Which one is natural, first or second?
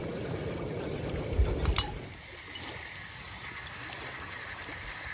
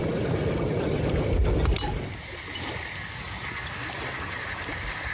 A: second